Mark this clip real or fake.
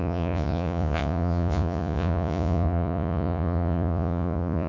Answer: fake